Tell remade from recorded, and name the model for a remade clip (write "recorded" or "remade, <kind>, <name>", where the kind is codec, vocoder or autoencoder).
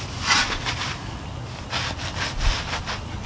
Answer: recorded